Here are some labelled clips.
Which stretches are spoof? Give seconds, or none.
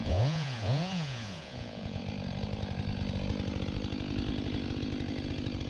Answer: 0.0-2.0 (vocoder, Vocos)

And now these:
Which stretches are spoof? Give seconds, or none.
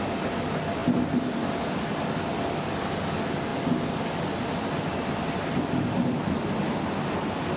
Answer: none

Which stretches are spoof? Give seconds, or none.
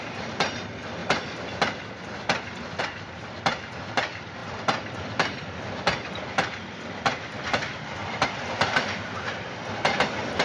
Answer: 0.0-10.4 (vocoder, BigVGAN v2)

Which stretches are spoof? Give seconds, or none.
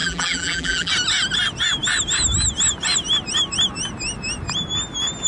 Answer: 0.0-0.9 (vocoder, BigVGAN v2)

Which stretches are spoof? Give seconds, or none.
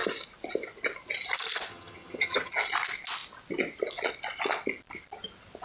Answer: 1.7-2.5 (vocoder, HiFi-GAN)